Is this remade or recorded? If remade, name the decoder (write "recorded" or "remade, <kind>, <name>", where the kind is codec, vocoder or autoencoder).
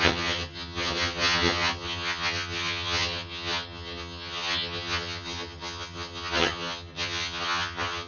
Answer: remade, vocoder, HiFi-GAN